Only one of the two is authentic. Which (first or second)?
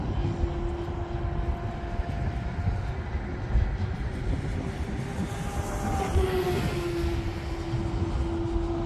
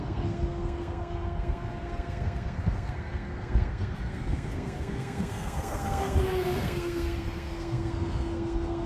first